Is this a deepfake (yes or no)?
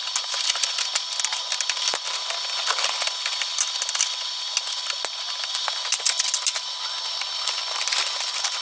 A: no